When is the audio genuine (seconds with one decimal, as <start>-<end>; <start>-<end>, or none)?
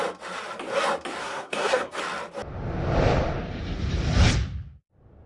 0.0-1.2; 2.0-5.3